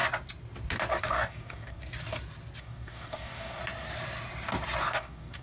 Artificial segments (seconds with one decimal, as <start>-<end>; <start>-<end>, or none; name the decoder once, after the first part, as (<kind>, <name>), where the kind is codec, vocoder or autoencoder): 1.0-1.8 (codec, DAC); 2.6-3.6; 4.8-5.4

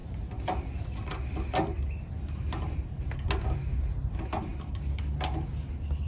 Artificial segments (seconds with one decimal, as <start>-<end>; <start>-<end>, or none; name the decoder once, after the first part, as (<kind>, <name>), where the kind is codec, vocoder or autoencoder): none

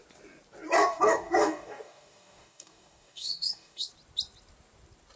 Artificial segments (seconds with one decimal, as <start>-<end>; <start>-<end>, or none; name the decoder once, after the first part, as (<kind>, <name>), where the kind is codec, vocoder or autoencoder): 0.8-3.9 (codec, DAC)

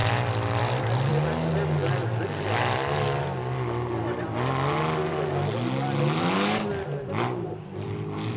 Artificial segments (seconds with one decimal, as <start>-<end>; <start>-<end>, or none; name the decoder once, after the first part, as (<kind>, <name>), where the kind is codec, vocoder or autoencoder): none

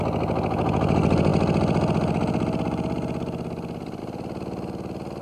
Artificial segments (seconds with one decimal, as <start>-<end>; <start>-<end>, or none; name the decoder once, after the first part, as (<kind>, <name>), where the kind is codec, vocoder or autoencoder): none

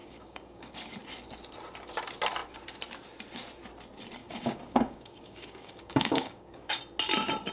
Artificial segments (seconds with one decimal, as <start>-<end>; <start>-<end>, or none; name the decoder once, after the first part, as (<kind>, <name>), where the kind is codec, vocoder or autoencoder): 0.0-0.7 (codec, DAC); 4.2-6.8